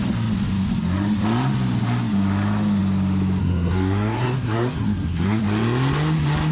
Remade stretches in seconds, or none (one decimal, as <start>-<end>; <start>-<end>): 3.4-5.4